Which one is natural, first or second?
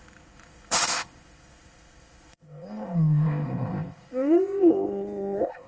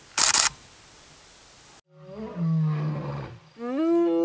second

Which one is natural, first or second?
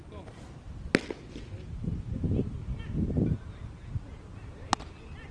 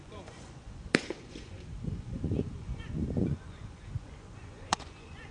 first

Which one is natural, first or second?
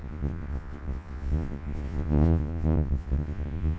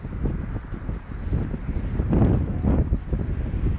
second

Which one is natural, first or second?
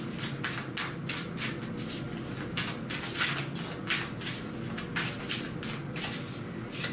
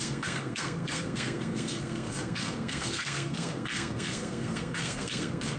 first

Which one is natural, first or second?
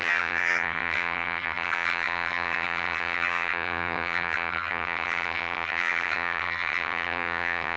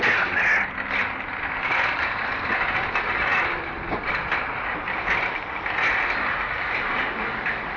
second